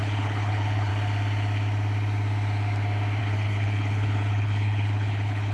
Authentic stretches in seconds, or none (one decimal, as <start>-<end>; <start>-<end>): 0.9-3.2